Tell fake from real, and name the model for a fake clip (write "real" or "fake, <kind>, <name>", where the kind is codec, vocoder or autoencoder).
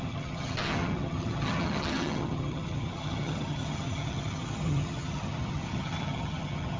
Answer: fake, vocoder, HiFi-GAN